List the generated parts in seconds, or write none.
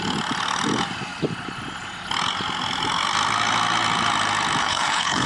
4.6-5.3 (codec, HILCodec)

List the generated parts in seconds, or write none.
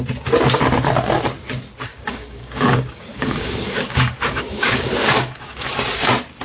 1.9-5.7 (codec, DAC)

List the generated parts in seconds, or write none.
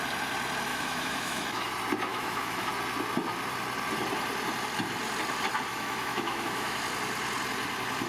0.7-1.7 (autoencoder, DAC-VAE); 2.1-2.7; 5.7-6.8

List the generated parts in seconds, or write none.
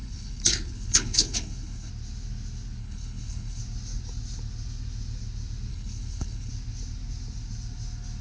0.0-1.9 (codec, HILCodec); 2.8-3.6; 5.7-6.5